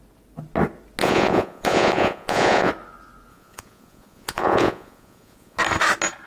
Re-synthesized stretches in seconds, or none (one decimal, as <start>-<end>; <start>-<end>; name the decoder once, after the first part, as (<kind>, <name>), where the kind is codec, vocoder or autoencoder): 1.0-2.7 (vocoder, Vocos); 3.3-5.6